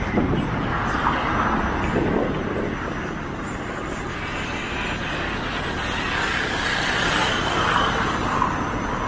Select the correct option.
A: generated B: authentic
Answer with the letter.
B